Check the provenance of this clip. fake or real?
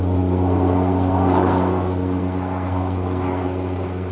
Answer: fake